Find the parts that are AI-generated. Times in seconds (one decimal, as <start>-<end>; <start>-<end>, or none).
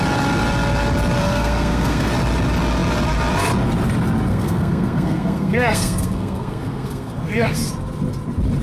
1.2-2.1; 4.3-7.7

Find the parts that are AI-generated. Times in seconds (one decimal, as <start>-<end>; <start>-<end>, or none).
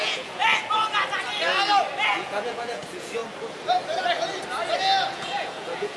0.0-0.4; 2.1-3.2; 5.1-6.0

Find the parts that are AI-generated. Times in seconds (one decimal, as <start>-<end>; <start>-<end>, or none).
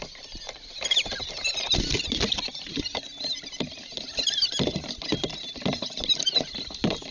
none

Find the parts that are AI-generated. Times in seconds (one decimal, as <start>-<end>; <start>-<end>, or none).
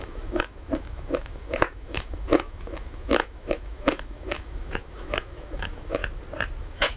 0.0-6.0; 6.6-7.0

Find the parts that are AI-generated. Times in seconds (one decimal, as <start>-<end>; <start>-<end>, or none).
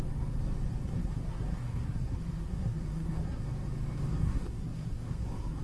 0.8-3.4; 4.1-5.6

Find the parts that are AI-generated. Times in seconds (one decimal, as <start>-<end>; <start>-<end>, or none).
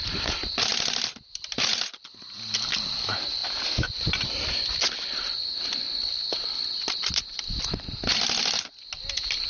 none